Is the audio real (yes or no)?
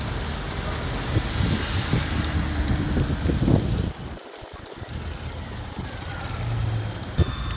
yes